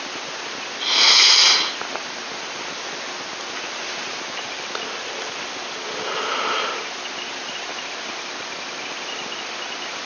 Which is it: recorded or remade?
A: recorded